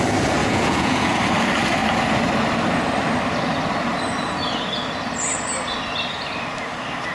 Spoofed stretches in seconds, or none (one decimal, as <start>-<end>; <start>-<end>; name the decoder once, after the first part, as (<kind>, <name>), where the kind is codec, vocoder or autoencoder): 0.4-1.2 (vocoder, Vocos)